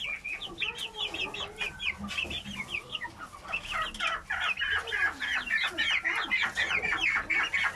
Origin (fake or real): real